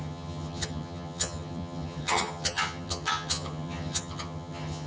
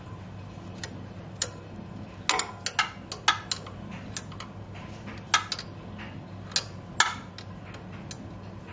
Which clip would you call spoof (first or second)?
first